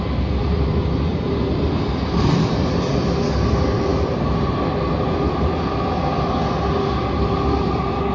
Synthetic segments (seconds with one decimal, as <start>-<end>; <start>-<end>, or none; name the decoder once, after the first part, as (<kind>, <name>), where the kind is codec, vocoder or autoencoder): 0.4-1.6 (vocoder, BigVGAN v2)